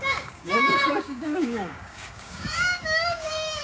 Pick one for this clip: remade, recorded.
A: remade